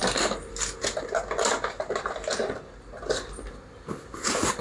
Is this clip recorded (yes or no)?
yes